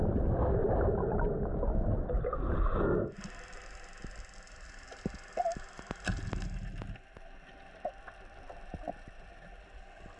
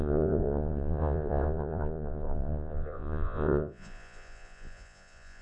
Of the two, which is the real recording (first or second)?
first